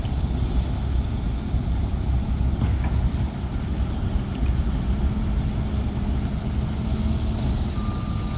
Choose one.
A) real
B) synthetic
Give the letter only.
A